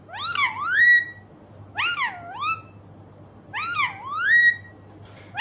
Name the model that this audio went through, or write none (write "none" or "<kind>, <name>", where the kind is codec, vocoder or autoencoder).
none